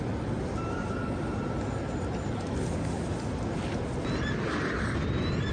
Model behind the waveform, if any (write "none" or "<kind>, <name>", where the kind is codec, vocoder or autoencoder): none